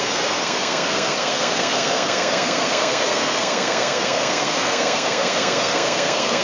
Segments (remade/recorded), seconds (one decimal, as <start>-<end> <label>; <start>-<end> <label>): 0.0-6.4 remade